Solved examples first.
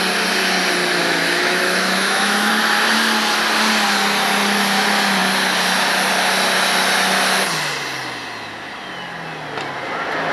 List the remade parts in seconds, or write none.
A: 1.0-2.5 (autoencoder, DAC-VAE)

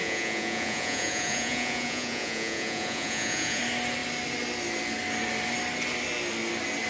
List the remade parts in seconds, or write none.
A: 0.0-3.6 (vocoder, Vocos)

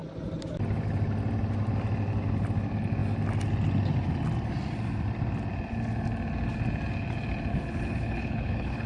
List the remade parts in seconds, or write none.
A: 7.5-8.9 (codec, HILCodec)

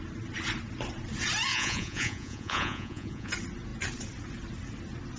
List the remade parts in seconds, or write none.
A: 1.5-3.3 (vocoder, Vocos)

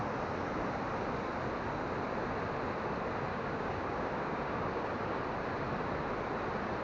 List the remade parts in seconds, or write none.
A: 3.3-5.2 (codec, DAC)

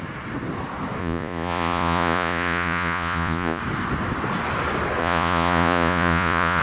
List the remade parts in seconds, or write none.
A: 1.0-3.6 (vocoder, Vocos); 5.0-6.6

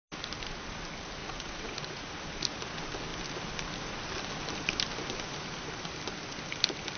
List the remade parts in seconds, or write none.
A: 1.2-2.1 (vocoder, Vocos)